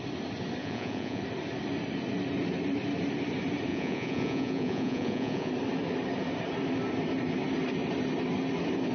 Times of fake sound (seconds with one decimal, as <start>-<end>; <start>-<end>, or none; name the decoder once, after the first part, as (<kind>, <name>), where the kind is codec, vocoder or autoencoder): 0.6-1.2 (vocoder, Vocos); 3.7-5.5

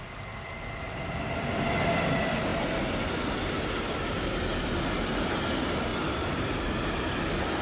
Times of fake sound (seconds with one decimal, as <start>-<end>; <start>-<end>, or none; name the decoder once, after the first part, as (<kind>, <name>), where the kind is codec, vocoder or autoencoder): none